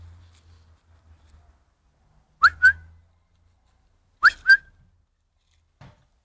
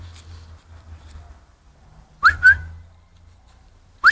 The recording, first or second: first